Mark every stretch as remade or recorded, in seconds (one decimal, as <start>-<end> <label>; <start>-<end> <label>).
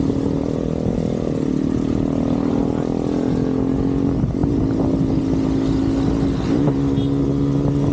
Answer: 0.0-7.9 recorded